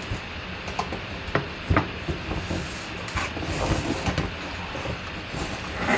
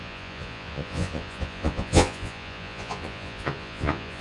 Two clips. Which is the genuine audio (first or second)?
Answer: first